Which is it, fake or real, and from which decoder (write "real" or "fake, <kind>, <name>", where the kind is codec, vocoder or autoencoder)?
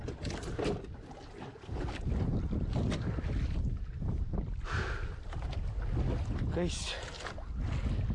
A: real